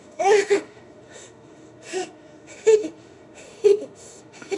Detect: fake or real fake